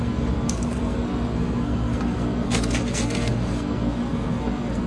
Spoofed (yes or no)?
yes